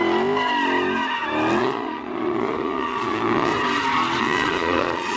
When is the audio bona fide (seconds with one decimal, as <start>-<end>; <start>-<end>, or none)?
0.0-1.6; 3.5-4.2